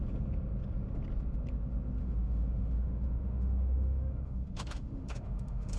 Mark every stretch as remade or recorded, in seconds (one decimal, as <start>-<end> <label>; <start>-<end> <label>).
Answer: 0.0-2.0 recorded; 2.0-5.8 remade